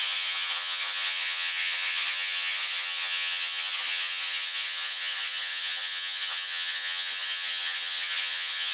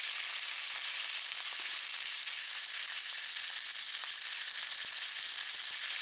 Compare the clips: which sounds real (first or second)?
second